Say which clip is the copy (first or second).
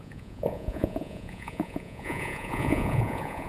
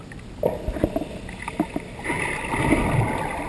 first